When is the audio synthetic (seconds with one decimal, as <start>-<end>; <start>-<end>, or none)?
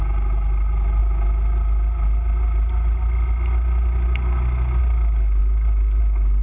none